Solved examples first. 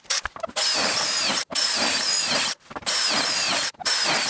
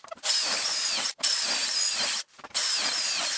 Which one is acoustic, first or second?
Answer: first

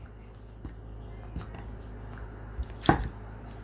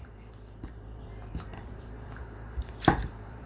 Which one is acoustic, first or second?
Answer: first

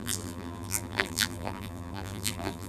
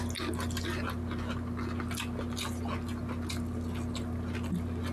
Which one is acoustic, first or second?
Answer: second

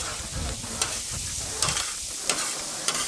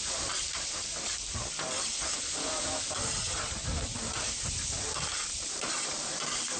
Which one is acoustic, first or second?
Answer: first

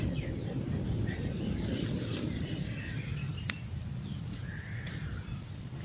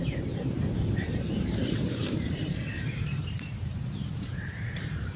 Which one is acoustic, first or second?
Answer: first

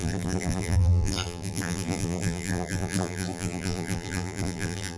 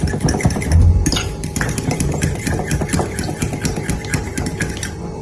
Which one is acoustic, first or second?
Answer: second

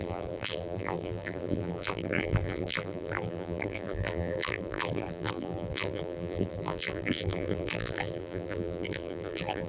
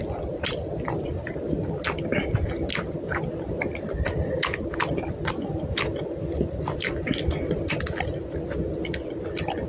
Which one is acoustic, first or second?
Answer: second